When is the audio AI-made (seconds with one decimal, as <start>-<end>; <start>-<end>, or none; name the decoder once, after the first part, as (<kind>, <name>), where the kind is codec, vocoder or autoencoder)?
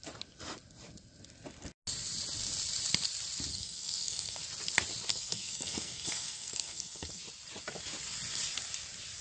3.5-4.4 (codec, SNAC); 5.1-7.2